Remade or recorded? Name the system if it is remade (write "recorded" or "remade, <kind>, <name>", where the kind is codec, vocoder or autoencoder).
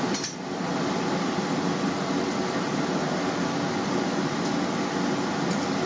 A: recorded